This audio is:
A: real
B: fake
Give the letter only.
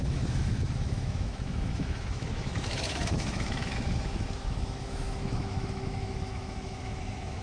B